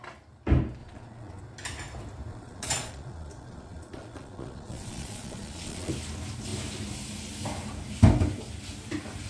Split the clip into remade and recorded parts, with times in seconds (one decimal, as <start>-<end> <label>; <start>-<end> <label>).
0.0-0.8 recorded; 0.8-1.4 remade; 1.4-2.3 recorded; 2.3-5.9 remade; 5.9-9.3 recorded